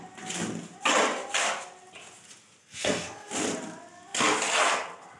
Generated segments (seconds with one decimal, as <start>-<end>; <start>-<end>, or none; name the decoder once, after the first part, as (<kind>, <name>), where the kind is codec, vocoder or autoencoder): 2.6-3.3 (codec, SNAC)